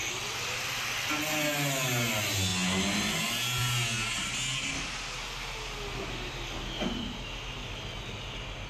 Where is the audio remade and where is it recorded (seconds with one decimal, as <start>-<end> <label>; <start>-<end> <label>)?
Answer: 0.0-8.7 recorded